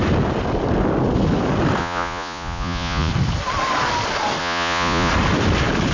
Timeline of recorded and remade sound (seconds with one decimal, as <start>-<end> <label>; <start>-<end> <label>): 0.0-1.8 recorded; 1.8-3.1 remade; 3.1-4.4 recorded; 4.4-5.1 remade; 5.1-5.9 recorded